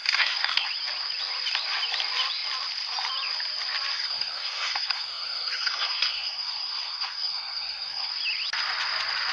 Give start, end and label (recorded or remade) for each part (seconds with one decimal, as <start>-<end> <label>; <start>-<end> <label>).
0.0-0.7 remade; 0.7-3.9 recorded; 3.9-8.1 remade; 8.1-9.3 recorded